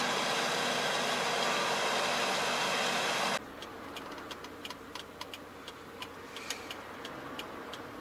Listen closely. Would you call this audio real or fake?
real